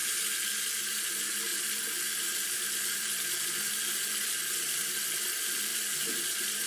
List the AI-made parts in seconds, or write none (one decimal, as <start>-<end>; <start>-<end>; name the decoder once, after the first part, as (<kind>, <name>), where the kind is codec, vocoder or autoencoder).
none